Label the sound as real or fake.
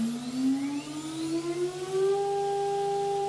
real